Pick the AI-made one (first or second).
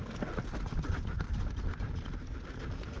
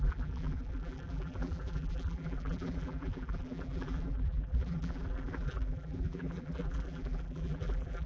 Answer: second